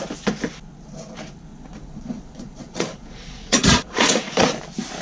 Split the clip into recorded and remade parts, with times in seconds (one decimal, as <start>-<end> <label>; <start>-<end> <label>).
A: 0.0-1.5 recorded; 1.5-4.5 remade; 4.5-5.0 recorded